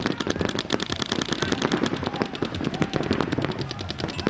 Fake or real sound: real